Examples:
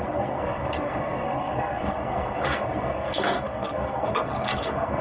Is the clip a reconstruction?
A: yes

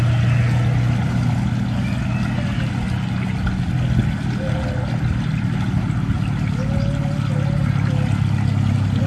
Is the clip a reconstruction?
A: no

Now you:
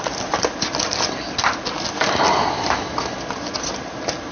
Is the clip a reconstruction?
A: no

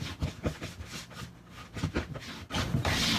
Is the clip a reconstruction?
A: no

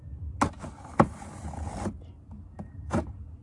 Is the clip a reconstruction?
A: no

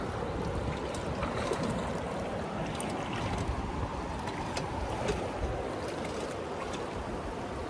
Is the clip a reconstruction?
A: no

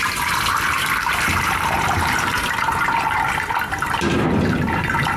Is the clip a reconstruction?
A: yes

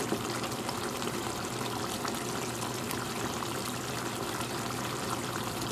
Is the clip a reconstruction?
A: yes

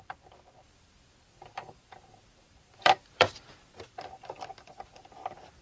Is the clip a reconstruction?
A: yes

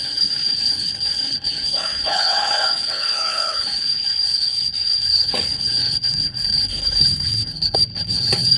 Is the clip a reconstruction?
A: yes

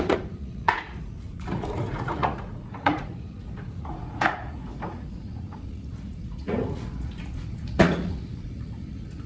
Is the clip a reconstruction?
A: yes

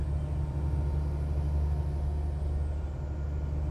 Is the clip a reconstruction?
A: no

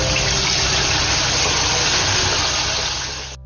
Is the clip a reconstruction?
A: no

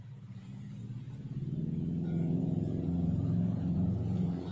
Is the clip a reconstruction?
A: yes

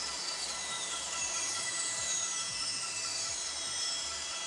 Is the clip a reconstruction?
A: yes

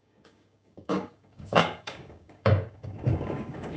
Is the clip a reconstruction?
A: yes